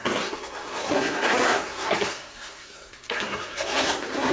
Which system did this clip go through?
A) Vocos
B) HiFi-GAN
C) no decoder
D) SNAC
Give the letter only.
D